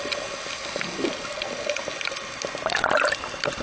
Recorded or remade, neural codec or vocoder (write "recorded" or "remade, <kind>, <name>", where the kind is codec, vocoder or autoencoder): recorded